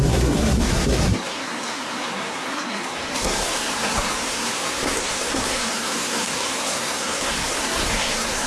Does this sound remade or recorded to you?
remade